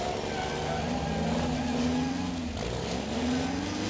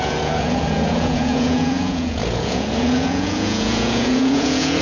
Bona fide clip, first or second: first